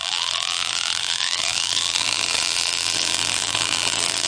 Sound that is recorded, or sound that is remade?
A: remade